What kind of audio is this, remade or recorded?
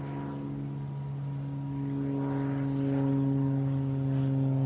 recorded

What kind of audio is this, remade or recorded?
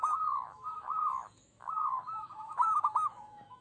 remade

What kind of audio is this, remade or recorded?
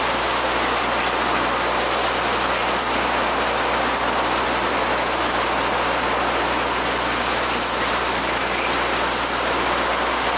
recorded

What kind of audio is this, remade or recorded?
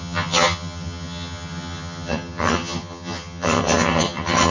remade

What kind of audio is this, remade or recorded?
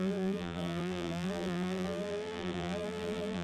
remade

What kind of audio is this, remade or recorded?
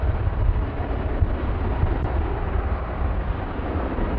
recorded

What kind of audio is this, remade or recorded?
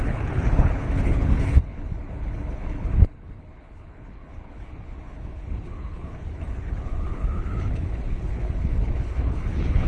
remade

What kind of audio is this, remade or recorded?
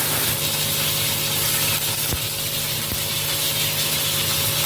recorded